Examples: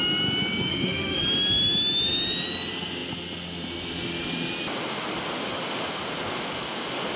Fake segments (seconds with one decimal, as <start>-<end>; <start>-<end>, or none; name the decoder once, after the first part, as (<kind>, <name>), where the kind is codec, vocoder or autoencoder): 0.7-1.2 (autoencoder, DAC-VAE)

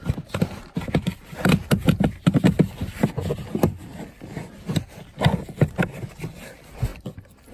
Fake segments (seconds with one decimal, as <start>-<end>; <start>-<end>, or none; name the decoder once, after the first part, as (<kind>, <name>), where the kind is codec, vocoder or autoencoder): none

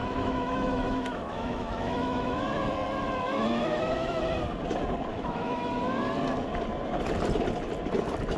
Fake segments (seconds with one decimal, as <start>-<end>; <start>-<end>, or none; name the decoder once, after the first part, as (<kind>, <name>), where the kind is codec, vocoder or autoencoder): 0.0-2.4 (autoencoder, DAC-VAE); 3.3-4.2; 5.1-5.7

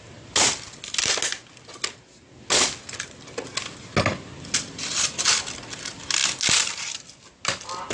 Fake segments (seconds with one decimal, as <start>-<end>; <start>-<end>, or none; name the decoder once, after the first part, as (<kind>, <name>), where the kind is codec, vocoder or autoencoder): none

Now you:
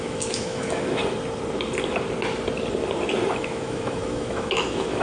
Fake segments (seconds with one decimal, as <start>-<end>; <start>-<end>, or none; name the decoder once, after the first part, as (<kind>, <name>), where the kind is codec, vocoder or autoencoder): 0.0-1.0 (autoencoder, DAC-VAE); 3.3-5.0

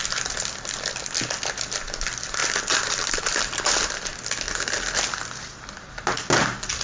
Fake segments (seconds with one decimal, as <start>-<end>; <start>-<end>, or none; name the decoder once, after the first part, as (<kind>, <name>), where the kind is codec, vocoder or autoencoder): none

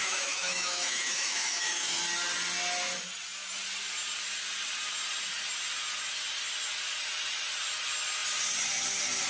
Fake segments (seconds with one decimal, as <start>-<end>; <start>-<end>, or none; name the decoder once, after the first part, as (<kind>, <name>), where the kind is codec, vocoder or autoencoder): 0.0-2.0 (autoencoder, DAC-VAE)

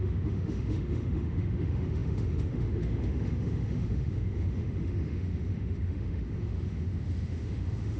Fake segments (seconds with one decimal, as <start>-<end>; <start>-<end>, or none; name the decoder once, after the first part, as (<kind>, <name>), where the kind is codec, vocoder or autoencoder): 0.0-8.0 (autoencoder, DAC-VAE)